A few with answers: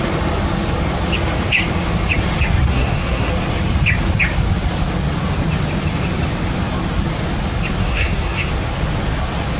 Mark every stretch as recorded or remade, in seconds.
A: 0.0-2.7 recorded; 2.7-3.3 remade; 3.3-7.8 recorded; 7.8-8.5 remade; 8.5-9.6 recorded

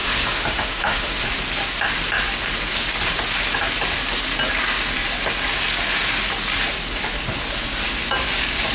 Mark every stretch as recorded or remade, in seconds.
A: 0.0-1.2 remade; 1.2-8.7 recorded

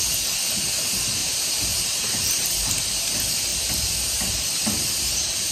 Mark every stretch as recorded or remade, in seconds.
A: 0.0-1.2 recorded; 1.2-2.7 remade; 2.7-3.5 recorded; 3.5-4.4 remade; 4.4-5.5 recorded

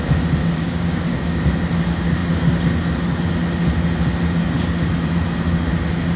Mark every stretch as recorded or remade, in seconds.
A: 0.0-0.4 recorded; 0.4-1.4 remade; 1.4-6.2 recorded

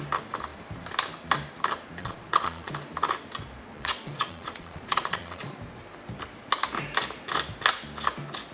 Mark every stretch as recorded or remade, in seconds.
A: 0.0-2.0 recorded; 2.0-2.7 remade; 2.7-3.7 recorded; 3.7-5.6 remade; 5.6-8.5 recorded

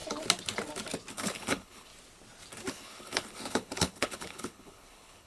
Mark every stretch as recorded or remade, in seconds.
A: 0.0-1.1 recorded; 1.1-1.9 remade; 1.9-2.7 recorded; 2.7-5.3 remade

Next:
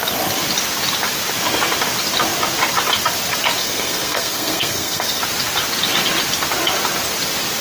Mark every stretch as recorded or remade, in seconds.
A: 0.0-3.6 recorded; 3.6-5.2 remade; 5.2-7.6 recorded

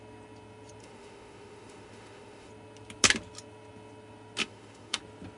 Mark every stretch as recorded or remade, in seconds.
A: 0.0-0.8 recorded; 0.8-2.5 remade; 2.5-4.4 recorded; 4.4-5.0 remade; 5.0-5.4 recorded